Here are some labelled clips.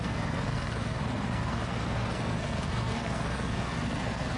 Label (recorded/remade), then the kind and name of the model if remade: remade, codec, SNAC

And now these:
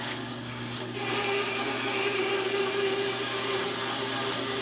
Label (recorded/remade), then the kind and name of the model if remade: recorded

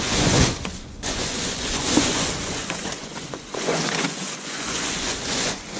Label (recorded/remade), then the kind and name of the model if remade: remade, vocoder, Vocos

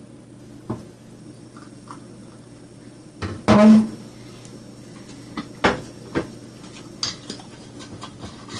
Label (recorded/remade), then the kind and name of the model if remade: recorded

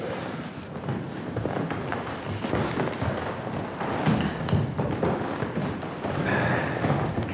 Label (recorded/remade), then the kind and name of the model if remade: recorded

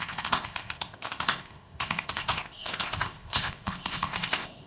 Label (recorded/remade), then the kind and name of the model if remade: remade, codec, ZipCodec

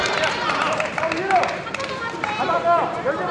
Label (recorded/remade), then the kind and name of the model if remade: remade, vocoder, BigVGAN v2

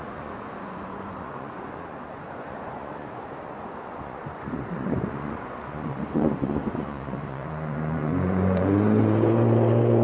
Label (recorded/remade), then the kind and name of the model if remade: remade, vocoder, Vocos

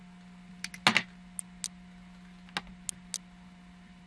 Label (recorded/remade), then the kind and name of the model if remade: recorded